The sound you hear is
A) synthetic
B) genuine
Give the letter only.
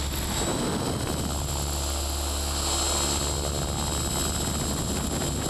B